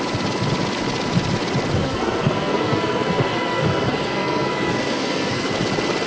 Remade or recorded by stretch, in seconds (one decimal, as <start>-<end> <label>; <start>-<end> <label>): 0.0-1.8 recorded; 1.8-5.5 remade; 5.5-6.1 recorded